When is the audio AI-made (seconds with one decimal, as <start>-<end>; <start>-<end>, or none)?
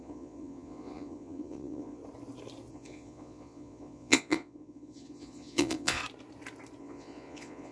0.0-2.0; 2.7-6.0; 6.8-7.7